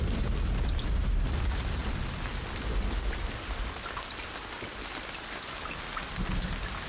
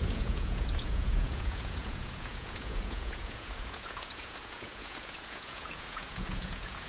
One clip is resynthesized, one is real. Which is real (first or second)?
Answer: first